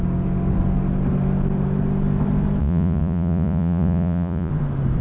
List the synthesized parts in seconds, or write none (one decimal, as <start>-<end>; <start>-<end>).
2.6-4.5